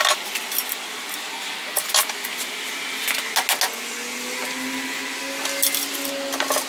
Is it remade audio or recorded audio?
recorded